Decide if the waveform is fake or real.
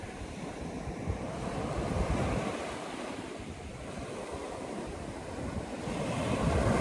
fake